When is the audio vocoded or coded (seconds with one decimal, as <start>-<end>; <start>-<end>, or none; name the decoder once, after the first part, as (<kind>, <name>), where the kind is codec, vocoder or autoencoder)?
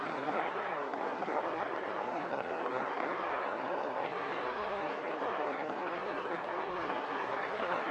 0.0-7.9 (codec, SNAC)